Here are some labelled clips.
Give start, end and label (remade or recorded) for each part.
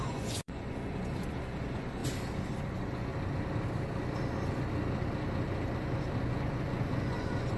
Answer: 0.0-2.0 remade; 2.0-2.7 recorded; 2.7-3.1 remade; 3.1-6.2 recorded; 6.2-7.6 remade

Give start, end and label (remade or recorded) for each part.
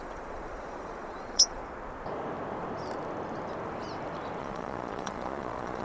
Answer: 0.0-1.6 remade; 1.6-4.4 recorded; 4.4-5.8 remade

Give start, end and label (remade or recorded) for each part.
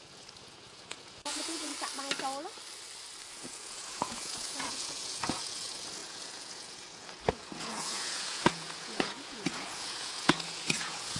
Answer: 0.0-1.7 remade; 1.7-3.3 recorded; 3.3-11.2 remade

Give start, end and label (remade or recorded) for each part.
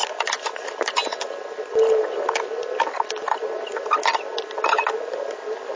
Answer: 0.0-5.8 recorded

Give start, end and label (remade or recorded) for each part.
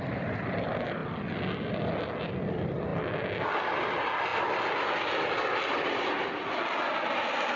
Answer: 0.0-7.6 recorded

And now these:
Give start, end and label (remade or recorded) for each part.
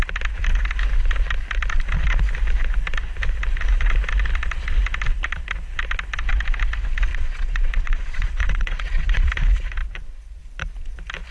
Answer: 0.0-7.1 recorded; 7.1-9.3 remade; 9.3-11.3 recorded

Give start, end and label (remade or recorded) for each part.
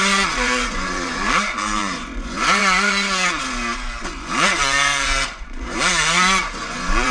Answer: 0.0-3.4 remade; 3.4-4.0 recorded; 4.0-7.1 remade